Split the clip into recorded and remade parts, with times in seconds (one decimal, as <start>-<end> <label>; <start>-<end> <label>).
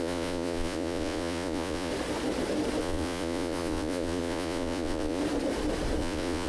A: 0.0-1.9 remade; 1.9-2.8 recorded; 2.8-5.2 remade; 5.2-6.0 recorded; 6.0-6.5 remade